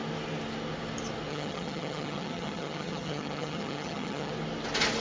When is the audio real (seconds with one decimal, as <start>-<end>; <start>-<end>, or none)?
0.0-1.3; 4.3-5.0